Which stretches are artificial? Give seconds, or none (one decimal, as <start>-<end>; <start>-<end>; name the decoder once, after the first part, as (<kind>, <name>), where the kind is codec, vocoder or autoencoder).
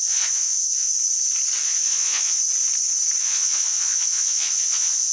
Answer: 0.0-0.9 (vocoder, Vocos); 1.6-2.4; 3.2-5.1